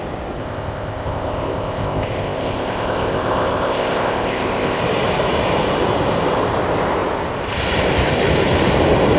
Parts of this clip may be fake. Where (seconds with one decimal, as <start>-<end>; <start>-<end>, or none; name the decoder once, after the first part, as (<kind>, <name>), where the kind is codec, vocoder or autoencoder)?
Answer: 0.4-4.8 (codec, ZipCodec)